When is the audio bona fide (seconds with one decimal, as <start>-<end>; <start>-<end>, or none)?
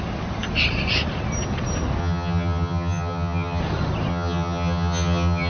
0.0-2.0; 3.6-4.1